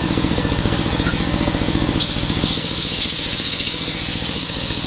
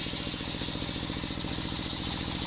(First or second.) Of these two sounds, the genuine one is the second